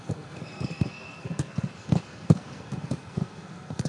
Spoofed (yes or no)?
yes